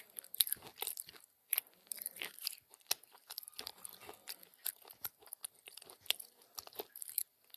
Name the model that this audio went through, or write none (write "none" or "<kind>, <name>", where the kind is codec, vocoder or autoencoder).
none